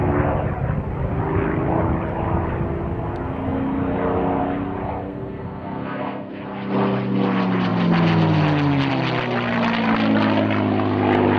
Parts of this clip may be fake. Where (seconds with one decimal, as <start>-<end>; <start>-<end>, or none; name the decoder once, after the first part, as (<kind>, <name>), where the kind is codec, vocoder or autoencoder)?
5.1-6.4 (codec, SNAC)